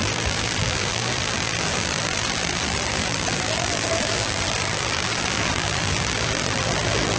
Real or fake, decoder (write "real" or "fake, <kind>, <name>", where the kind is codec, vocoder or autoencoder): fake, vocoder, BigVGAN v2